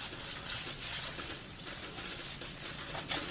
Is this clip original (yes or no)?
no